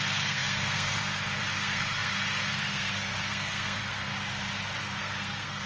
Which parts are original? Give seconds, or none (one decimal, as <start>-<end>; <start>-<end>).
4.1-5.0